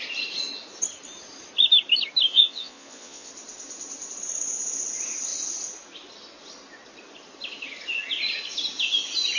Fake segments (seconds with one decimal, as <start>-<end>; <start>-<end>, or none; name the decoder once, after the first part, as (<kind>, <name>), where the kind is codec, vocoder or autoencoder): 2.3-3.3 (vocoder, Vocos)